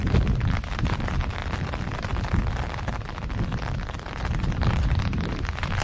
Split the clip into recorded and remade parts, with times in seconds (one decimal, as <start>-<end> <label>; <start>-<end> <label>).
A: 0.0-1.4 remade; 1.4-4.2 recorded; 4.2-5.8 remade